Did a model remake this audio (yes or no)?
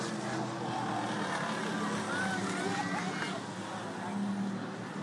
no